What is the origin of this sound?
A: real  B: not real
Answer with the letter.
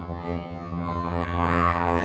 B